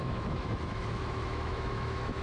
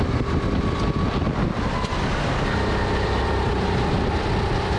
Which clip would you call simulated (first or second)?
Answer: first